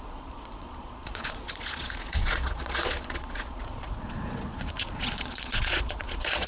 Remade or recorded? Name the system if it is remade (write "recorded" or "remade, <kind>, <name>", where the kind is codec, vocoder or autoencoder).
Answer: remade, vocoder, Vocos